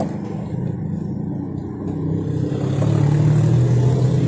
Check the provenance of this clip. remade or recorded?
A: recorded